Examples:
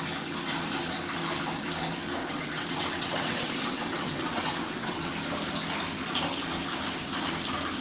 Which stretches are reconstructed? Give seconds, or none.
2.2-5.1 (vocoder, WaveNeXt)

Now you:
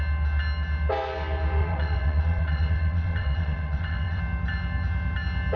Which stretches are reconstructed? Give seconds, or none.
1.6-4.2 (vocoder, WaveNeXt)